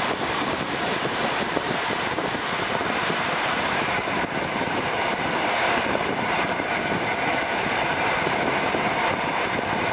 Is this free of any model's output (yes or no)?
no